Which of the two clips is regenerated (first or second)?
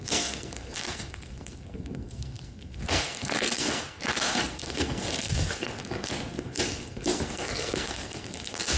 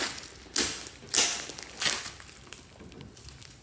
first